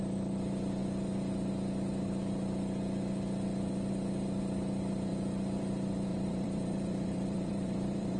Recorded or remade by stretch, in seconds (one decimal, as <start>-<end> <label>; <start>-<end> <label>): 0.0-6.1 recorded; 6.1-8.2 remade